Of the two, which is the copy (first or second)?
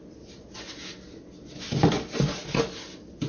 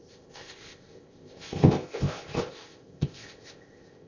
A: second